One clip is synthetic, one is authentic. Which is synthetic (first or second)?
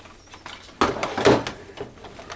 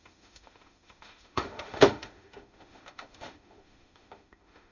second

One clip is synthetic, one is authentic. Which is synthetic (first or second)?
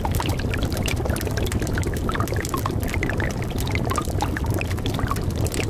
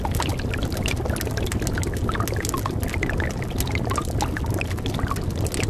first